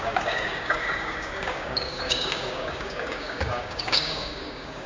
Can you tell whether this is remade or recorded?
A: remade